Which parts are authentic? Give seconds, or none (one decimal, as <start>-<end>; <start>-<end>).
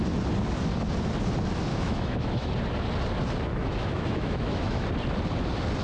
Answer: 0.0-1.7; 2.5-3.5; 4.9-5.8